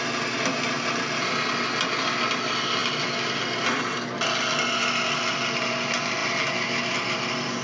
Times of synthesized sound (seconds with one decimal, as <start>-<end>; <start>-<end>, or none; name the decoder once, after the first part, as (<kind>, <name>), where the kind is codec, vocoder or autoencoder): none